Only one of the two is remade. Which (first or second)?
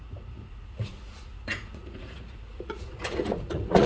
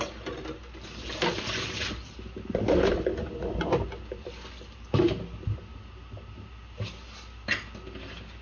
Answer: first